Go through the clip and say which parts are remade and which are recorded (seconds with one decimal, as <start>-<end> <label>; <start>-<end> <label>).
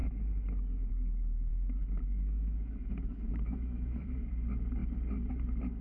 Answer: 0.0-0.9 remade; 0.9-1.5 recorded; 1.5-4.3 remade; 4.3-5.8 recorded